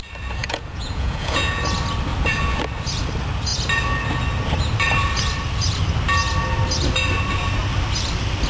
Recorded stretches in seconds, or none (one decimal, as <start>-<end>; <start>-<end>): 0.0-0.4; 1.6-8.5